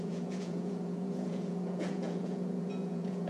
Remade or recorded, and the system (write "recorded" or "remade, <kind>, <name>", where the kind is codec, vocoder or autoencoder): remade, vocoder, Vocos